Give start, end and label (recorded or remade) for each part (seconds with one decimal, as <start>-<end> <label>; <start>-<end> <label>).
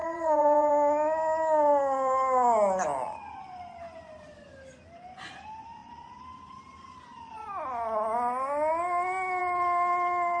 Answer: 0.0-0.7 remade; 0.7-10.4 recorded